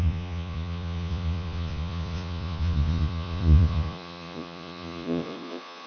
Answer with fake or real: fake